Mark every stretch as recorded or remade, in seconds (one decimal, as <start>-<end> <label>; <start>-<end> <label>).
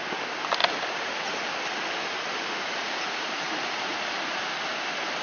0.0-0.6 recorded; 0.6-1.5 remade; 1.5-2.5 recorded; 2.5-4.4 remade; 4.4-5.2 recorded